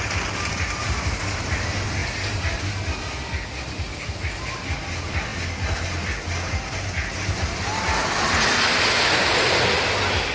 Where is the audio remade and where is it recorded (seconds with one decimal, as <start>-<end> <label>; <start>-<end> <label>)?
0.0-10.3 recorded